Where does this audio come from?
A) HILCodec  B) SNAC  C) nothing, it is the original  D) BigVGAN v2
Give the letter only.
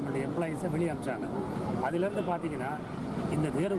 C